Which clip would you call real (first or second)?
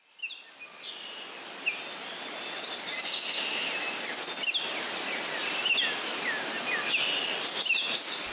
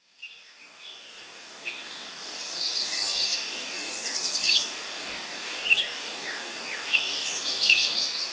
first